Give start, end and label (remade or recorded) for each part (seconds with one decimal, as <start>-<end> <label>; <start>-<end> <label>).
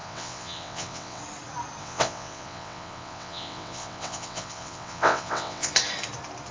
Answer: 0.0-1.2 remade; 1.2-1.8 recorded; 1.8-5.7 remade; 5.7-6.5 recorded